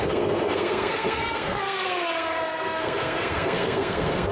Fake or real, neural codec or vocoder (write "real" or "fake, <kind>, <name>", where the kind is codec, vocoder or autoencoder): fake, codec, SNAC